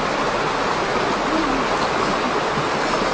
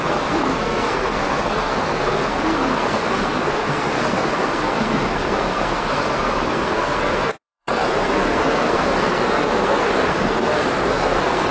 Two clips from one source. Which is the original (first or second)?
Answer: first